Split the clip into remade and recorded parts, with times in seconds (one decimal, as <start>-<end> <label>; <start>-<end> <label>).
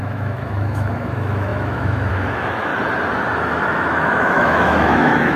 0.0-2.7 remade; 2.7-3.5 recorded; 3.5-5.4 remade